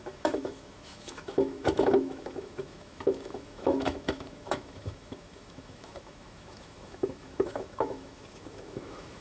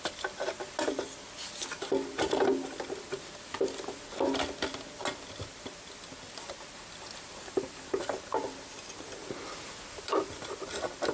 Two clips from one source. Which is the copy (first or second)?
first